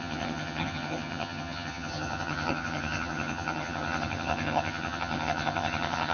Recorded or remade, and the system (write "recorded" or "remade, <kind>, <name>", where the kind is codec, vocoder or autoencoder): remade, vocoder, HiFi-GAN